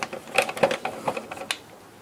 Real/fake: real